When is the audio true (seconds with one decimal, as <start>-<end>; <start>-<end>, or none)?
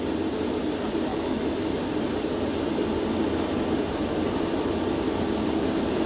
0.0-1.1; 1.7-6.1